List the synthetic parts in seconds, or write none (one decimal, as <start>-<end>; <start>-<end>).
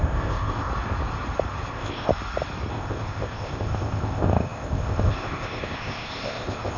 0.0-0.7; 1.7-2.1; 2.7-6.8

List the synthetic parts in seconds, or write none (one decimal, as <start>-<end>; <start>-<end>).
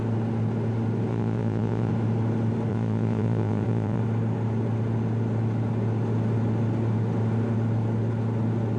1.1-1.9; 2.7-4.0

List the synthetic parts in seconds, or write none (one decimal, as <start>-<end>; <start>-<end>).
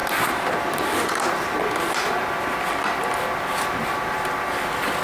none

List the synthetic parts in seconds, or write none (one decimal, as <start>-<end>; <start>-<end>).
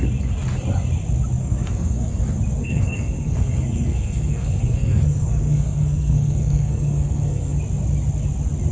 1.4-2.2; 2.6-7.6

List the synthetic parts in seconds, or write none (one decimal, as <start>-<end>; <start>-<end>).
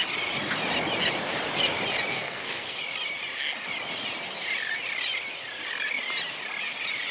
2.1-2.8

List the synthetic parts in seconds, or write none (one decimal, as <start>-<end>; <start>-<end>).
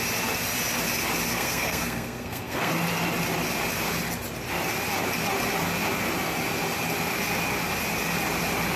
1.3-2.7